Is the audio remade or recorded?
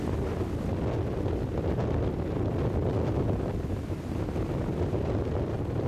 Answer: recorded